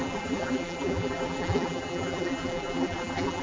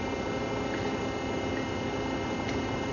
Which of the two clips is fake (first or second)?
first